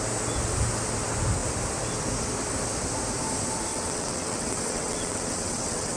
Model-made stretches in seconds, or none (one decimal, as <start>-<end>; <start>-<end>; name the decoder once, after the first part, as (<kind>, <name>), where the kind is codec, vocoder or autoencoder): 3.7-6.0 (vocoder, WaveNeXt)